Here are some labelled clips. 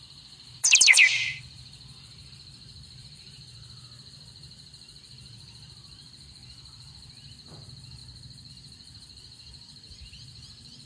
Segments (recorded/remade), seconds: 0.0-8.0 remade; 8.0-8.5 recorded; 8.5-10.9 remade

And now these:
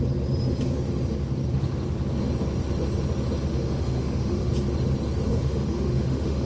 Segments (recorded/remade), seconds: 0.0-3.5 recorded; 3.5-4.5 remade; 4.5-5.3 recorded; 5.3-6.5 remade